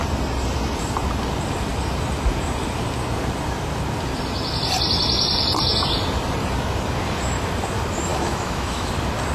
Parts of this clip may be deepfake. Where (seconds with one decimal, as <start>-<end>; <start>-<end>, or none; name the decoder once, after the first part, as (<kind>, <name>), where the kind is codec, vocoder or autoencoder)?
8.1-8.9 (autoencoder, DAC-VAE)